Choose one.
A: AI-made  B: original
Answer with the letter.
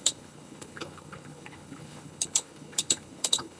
A